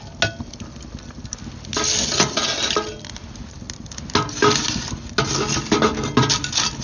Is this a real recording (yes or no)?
yes